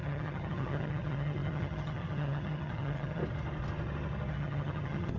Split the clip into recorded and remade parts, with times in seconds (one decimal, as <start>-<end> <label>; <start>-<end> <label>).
0.0-3.2 remade; 3.2-4.3 recorded; 4.3-5.2 remade